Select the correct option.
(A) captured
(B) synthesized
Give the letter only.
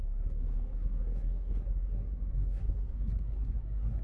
B